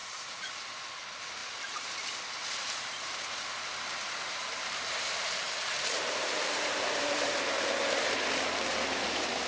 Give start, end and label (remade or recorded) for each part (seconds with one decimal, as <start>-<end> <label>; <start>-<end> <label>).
0.0-0.5 remade; 0.5-2.4 recorded; 2.4-7.4 remade; 7.4-8.7 recorded; 8.7-9.5 remade